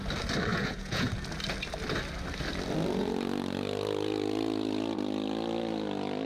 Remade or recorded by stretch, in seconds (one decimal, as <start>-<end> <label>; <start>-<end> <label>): 0.0-0.5 recorded; 0.5-1.1 remade; 1.1-6.3 recorded